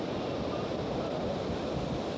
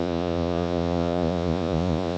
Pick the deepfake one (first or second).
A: second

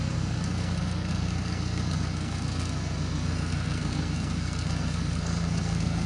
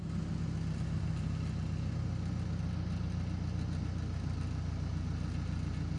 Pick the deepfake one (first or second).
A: first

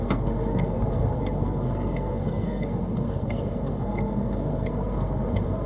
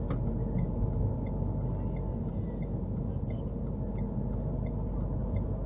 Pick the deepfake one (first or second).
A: first